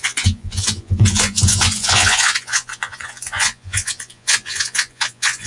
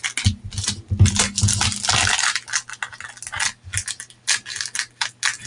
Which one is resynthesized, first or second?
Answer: first